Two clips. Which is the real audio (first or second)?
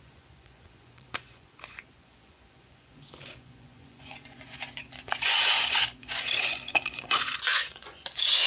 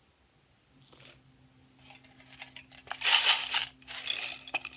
second